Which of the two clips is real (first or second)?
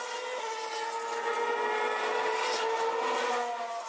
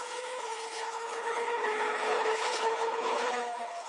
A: first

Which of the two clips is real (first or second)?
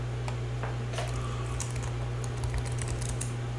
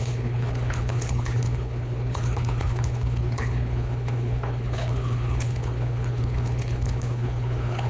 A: first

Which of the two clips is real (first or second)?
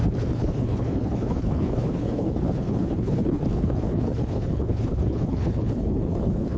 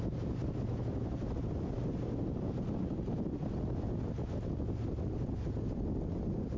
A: second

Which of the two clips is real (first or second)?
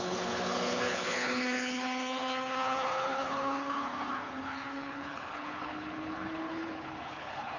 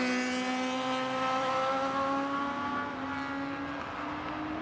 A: second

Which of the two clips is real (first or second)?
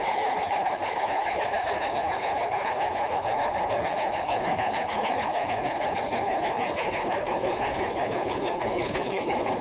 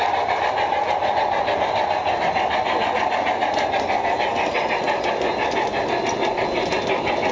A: second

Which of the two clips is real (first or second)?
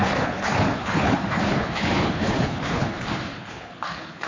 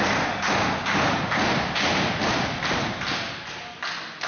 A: second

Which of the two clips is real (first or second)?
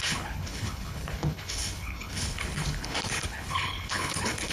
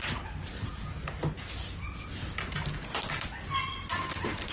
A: second